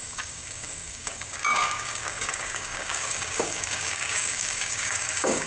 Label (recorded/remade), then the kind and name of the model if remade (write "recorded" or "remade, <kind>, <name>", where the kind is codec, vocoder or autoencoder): remade, codec, DAC